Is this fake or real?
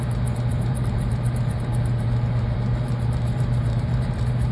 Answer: fake